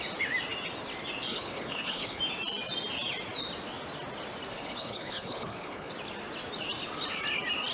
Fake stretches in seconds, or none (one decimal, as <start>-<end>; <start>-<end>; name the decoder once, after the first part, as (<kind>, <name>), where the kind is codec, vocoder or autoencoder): 1.3-2.2 (codec, HILCodec); 4.5-5.9